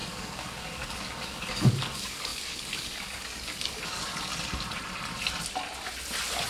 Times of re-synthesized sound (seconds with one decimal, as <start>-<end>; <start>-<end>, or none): 0.0-4.3